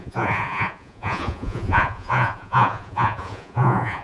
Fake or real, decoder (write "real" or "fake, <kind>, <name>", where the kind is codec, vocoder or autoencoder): fake, vocoder, Vocos